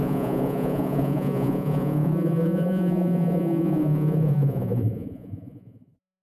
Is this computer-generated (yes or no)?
yes